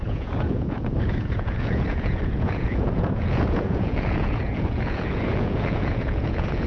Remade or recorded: remade